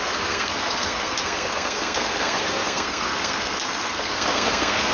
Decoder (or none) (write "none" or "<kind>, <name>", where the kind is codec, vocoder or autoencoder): codec, SNAC